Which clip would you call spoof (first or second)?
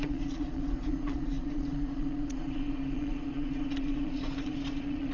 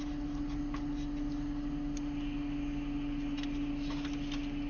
first